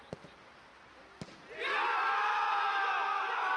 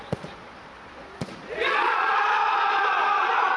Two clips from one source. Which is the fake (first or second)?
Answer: second